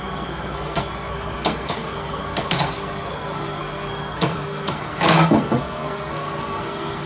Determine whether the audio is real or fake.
fake